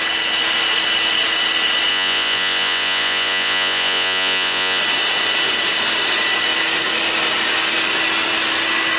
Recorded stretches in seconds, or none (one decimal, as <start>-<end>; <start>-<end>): 0.0-1.9; 4.8-9.0